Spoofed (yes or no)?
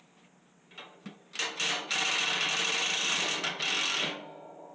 no